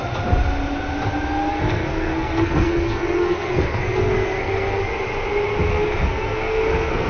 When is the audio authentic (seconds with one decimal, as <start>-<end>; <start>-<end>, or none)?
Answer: 0.0-1.5; 4.8-5.7